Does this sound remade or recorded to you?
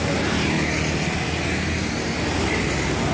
recorded